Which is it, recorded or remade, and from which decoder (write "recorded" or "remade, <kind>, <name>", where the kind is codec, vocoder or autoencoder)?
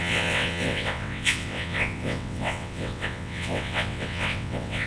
remade, vocoder, WaveNeXt